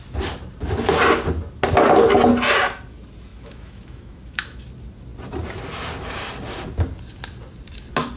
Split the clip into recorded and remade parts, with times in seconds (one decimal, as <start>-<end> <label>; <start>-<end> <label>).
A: 0.0-3.3 recorded; 3.3-4.6 remade; 4.6-8.2 recorded